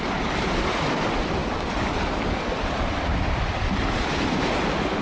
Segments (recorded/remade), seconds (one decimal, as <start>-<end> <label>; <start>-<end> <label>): 0.0-5.0 recorded